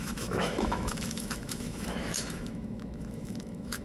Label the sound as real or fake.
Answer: fake